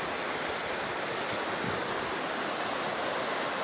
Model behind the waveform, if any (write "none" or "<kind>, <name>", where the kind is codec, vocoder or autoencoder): none